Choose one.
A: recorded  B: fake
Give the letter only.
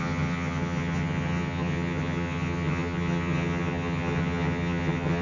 B